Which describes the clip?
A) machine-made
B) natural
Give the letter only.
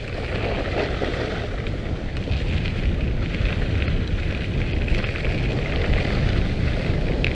B